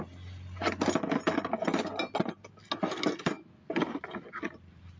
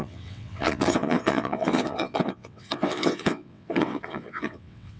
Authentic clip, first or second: first